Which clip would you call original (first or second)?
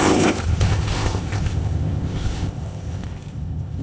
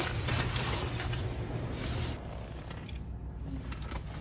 second